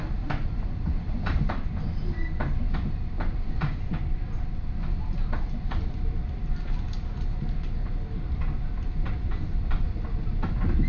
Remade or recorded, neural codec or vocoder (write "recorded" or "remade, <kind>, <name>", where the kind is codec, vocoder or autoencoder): recorded